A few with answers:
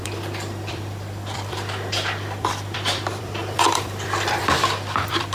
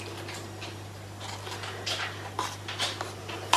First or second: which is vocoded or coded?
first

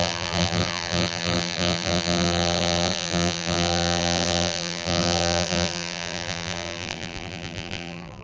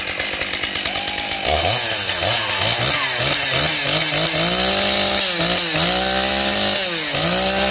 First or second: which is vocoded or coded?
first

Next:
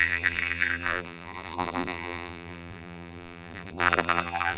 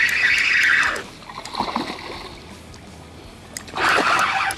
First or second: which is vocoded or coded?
first